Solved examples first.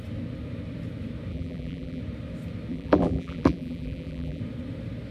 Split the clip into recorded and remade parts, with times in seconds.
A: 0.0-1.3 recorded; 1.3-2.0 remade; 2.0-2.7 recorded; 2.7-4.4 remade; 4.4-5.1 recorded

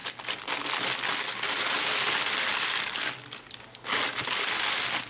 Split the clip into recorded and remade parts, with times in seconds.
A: 0.0-5.1 recorded

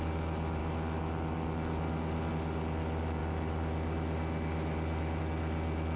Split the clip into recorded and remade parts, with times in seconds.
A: 0.0-6.0 recorded

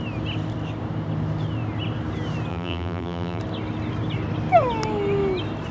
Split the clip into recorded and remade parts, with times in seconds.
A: 0.0-2.5 recorded; 2.5-3.4 remade; 3.4-5.7 recorded

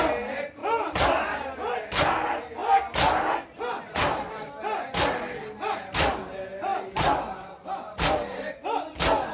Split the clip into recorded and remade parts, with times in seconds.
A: 0.0-0.6 recorded; 0.6-1.2 remade; 1.2-2.6 recorded; 2.6-4.5 remade; 4.5-9.3 recorded

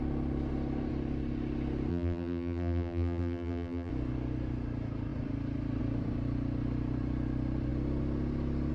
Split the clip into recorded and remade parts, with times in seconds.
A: 0.0-1.9 recorded; 1.9-3.9 remade; 3.9-8.7 recorded

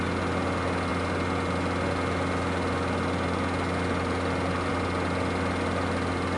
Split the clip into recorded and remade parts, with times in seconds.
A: 0.0-6.4 recorded

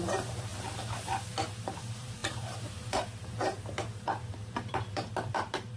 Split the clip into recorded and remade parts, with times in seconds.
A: 0.0-0.5 remade; 0.5-1.5 recorded; 1.5-5.8 remade